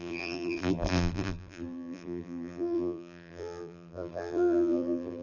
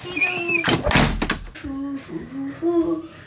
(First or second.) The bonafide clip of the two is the second